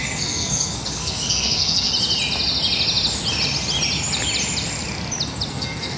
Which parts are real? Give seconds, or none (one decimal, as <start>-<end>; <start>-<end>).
1.9-5.5